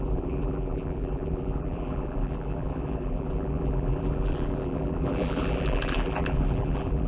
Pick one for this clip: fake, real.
fake